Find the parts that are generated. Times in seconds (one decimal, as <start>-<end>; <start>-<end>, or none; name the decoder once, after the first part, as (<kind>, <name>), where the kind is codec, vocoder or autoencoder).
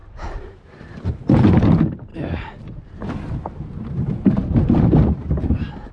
0.0-1.1 (vocoder, BigVGAN v2); 2.1-5.9